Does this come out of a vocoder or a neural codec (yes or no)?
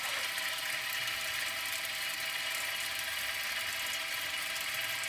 no